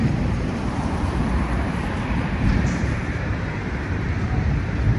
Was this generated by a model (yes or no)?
yes